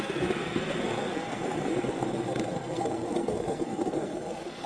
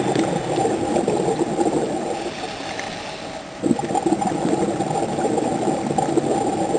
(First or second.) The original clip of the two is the second